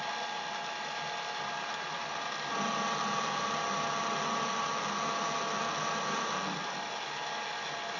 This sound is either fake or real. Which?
real